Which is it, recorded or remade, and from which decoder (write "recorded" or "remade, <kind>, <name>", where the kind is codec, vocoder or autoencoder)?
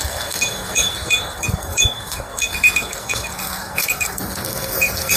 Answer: remade, codec, SNAC